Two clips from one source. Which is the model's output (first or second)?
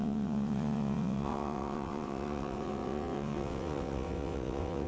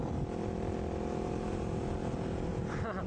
first